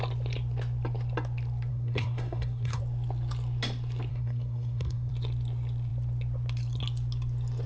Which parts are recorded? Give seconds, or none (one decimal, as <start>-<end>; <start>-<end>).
0.0-1.7; 2.8-4.1; 5.1-7.7